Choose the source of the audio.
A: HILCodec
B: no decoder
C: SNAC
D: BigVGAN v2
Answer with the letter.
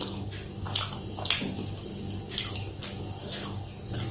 B